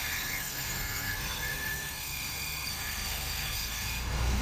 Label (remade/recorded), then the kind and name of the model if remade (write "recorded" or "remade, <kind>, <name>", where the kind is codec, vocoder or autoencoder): remade, codec, SNAC